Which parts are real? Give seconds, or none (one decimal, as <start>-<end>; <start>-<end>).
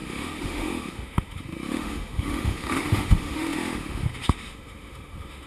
none